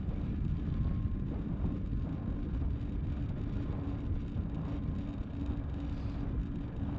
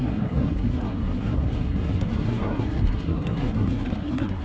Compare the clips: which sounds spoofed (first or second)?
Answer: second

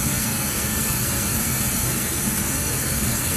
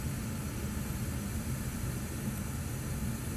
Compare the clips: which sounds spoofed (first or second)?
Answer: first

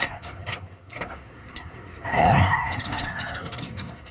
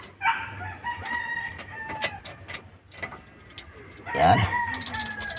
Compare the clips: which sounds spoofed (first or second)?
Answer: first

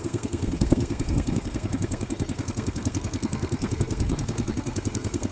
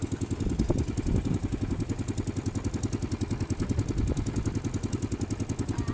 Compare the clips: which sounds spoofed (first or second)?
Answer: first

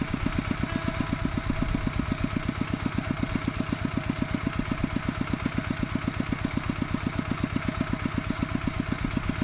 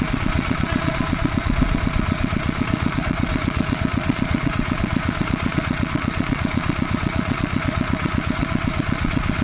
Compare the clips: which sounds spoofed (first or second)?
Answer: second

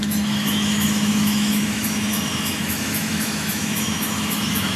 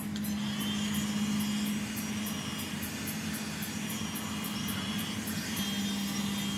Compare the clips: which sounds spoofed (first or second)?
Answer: first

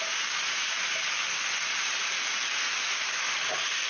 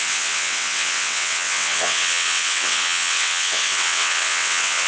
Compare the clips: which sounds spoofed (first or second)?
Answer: second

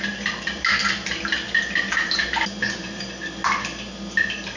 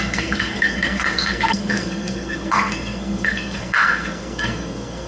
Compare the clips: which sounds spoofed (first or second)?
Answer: second